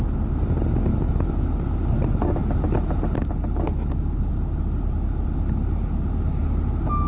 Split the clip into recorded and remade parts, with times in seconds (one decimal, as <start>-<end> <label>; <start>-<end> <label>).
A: 0.0-7.1 recorded